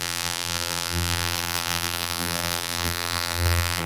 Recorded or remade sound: remade